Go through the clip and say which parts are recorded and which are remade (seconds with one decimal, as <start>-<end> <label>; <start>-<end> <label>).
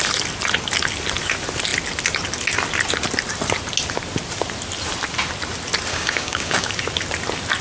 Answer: 0.0-5.9 recorded; 5.9-6.7 remade; 6.7-7.6 recorded